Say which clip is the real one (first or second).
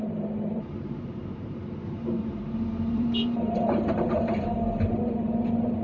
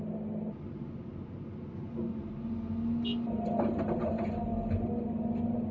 second